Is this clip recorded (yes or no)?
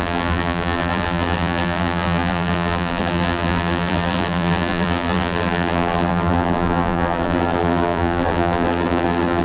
no